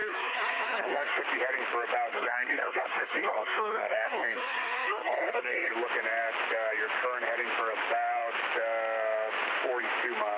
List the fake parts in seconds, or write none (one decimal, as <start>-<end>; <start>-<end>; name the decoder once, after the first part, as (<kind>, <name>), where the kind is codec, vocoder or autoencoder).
0.0-1.2 (codec, SNAC); 2.1-5.7